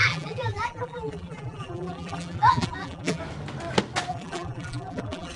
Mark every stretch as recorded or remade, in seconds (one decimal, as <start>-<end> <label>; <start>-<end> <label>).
0.0-3.2 remade; 3.2-4.1 recorded; 4.1-5.4 remade